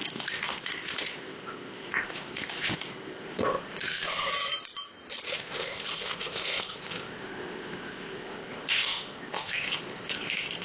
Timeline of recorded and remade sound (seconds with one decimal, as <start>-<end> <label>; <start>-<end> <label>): 0.0-4.3 remade; 4.3-5.3 recorded; 5.3-10.6 remade